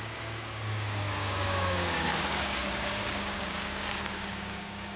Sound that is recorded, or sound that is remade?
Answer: remade